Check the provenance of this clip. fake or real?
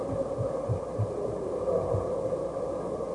real